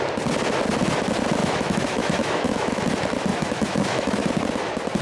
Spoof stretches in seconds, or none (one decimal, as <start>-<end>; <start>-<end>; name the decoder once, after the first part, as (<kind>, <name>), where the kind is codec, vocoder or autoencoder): 1.4-2.8 (autoencoder, DAC-VAE); 3.3-4.3